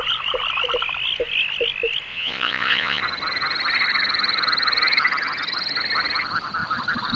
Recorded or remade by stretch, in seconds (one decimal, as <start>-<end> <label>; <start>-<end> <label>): 0.0-2.1 recorded; 2.1-3.0 remade; 3.0-7.2 recorded